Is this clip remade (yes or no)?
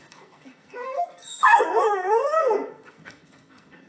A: yes